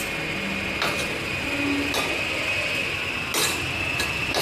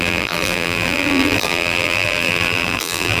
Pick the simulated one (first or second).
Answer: second